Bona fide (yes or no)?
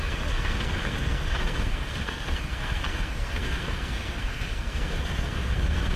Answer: no